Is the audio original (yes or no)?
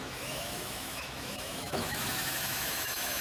no